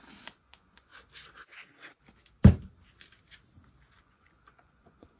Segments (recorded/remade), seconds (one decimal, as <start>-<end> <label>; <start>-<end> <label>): 0.0-0.9 remade; 0.9-4.0 recorded; 4.0-5.2 remade